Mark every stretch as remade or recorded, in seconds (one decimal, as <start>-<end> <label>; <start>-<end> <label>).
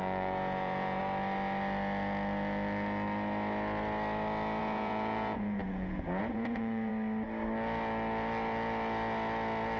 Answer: 0.0-1.0 remade; 1.0-4.6 recorded; 4.6-6.9 remade; 6.9-9.8 recorded